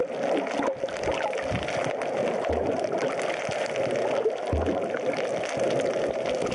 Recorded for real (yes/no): yes